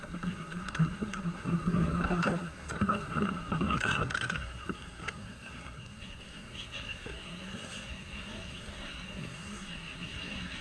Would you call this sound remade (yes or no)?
yes